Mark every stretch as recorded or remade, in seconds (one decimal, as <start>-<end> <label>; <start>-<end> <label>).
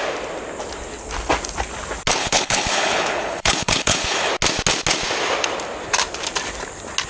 0.0-2.2 recorded; 2.2-4.3 remade; 4.3-7.1 recorded